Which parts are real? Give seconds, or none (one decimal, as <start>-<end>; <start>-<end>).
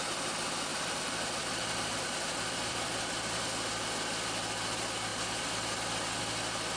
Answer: 0.0-0.7; 3.5-6.8